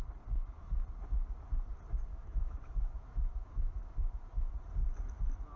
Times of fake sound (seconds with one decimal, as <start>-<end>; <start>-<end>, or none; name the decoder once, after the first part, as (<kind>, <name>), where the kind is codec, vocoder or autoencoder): 2.1-4.1 (autoencoder, DAC-VAE)